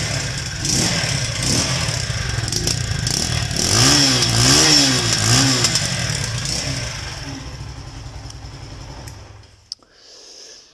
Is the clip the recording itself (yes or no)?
yes